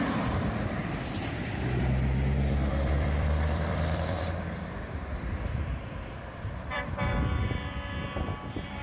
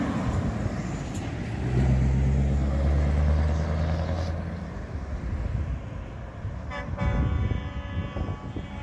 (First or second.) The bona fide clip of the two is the second